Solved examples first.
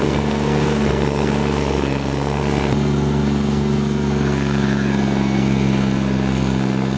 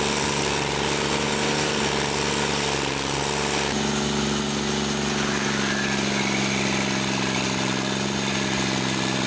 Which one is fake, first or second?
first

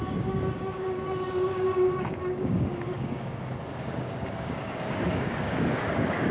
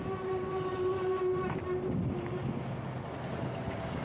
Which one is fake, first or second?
first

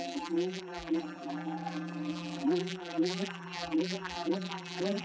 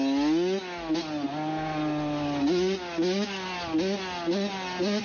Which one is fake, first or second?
first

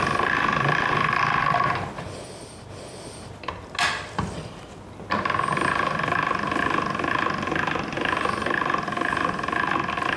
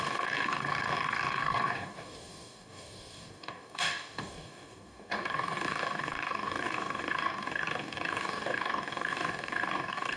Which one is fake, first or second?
second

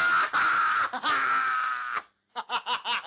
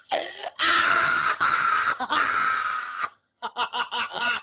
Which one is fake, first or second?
second